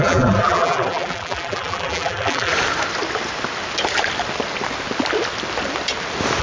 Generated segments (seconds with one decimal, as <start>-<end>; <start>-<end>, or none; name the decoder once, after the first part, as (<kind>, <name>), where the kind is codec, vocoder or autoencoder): 0.0-2.5 (vocoder, BigVGAN v2)